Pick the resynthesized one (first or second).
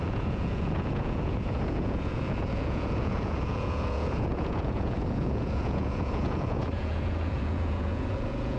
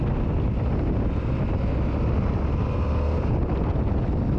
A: first